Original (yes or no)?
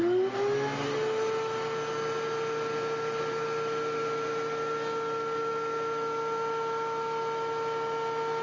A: yes